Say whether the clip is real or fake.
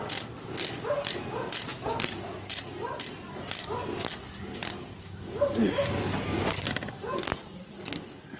real